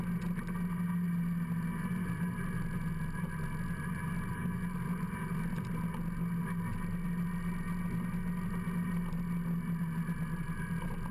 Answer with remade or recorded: recorded